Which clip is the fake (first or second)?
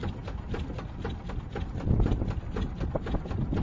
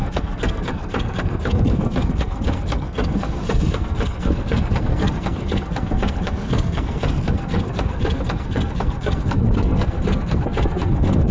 second